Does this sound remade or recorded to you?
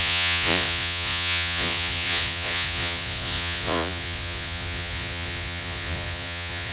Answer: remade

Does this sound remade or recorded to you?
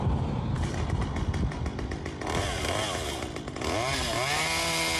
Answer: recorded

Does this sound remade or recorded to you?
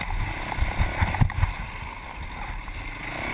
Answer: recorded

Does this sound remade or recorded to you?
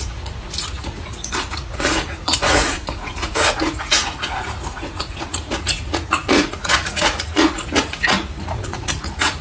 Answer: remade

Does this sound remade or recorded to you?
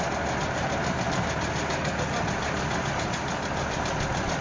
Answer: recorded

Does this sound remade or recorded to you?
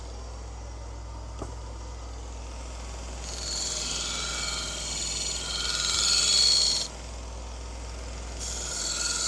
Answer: recorded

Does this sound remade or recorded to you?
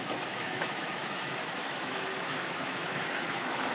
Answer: remade